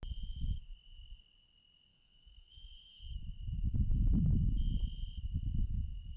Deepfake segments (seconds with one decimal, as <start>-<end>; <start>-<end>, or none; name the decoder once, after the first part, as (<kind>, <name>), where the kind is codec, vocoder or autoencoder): 1.9-3.2 (autoencoder, DAC-VAE)